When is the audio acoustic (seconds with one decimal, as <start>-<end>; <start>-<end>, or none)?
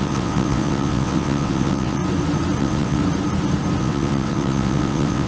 2.0-2.6; 3.0-3.8